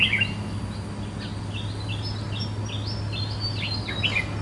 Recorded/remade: recorded